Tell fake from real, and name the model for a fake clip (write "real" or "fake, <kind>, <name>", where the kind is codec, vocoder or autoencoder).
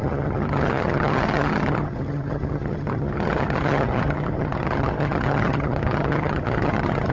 fake, vocoder, HiFi-GAN